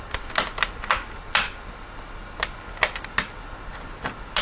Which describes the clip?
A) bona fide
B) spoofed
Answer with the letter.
A